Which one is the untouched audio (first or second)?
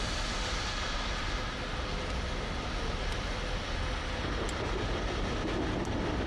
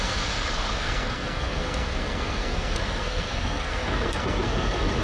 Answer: first